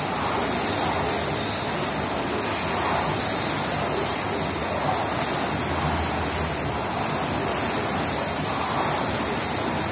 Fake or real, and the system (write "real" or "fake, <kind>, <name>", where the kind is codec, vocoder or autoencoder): real